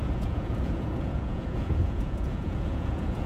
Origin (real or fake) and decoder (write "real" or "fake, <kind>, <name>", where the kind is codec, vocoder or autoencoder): fake, vocoder, Vocos